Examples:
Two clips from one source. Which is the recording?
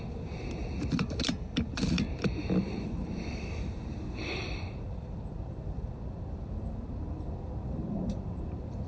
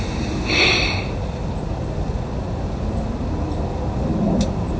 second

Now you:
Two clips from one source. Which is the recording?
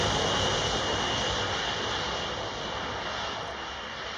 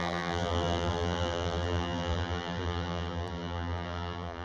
first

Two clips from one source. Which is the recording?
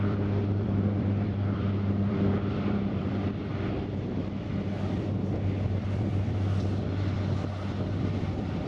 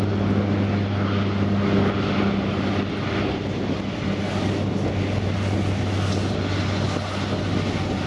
second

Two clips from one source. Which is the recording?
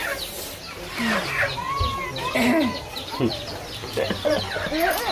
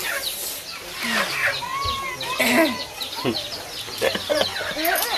second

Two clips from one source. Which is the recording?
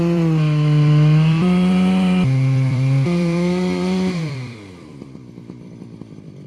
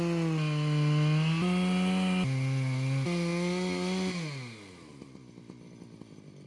second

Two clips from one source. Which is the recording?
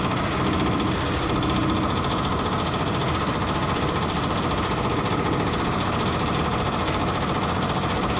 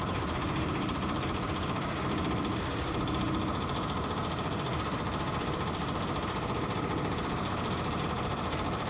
first